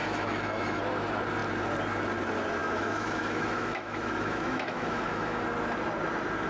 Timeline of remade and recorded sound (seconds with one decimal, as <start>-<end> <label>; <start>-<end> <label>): 0.0-0.8 remade; 0.8-2.6 recorded; 2.6-5.4 remade; 5.4-6.5 recorded